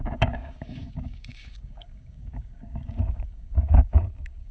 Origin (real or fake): fake